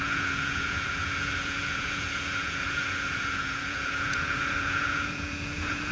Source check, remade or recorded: remade